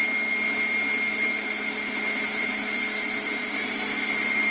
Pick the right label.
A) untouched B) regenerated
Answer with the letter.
A